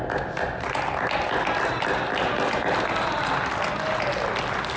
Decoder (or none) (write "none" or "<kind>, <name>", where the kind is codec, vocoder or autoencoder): none